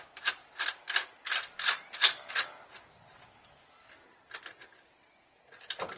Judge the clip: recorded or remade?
recorded